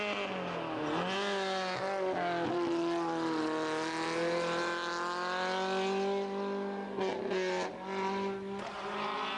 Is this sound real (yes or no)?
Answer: yes